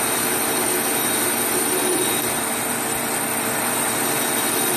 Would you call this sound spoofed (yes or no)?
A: no